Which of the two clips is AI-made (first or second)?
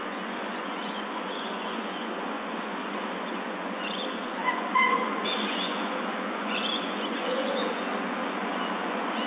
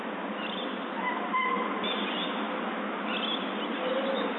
first